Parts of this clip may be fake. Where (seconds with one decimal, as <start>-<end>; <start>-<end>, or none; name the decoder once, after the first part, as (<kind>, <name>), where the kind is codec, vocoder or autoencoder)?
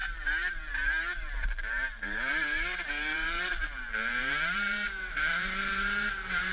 0.0-6.5 (vocoder, BigVGAN v2)